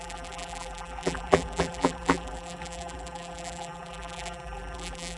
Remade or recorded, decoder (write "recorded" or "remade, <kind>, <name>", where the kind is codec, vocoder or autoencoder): remade, vocoder, BigVGAN v2